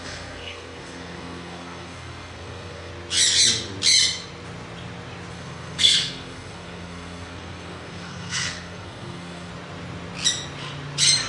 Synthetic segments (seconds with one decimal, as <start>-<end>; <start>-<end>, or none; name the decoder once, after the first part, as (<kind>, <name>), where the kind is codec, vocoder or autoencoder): 0.0-2.9 (codec, SNAC); 5.3-9.5